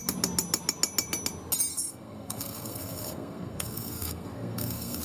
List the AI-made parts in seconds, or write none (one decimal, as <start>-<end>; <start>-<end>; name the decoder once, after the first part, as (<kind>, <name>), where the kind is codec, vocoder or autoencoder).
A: 1.7-5.0 (codec, SNAC)